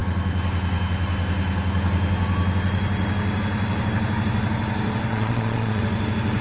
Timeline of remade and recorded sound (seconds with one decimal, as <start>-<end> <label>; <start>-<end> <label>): 0.0-5.1 recorded; 5.1-5.8 remade; 5.8-6.4 recorded